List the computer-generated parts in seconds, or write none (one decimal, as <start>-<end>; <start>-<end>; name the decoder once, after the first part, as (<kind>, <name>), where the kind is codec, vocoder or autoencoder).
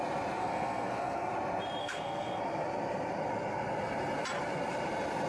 0.4-1.3 (codec, SNAC); 1.8-2.4